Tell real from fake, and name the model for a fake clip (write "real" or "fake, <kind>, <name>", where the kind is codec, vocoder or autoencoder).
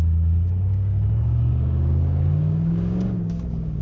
fake, codec, DAC